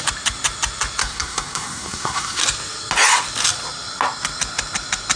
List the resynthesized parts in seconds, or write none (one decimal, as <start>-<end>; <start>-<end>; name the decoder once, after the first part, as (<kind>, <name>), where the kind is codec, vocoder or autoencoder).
1.0-2.4 (codec, SNAC)